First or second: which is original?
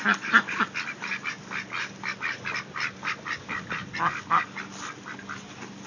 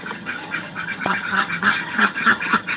first